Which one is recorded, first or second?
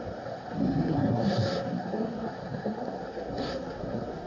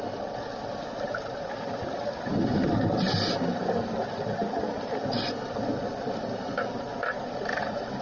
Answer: second